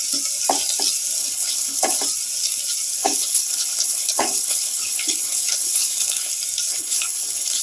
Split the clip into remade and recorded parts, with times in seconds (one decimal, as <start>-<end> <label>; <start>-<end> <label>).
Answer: 0.0-1.2 recorded; 1.2-2.0 remade; 2.0-3.0 recorded; 3.0-6.3 remade; 6.3-6.7 recorded; 6.7-7.6 remade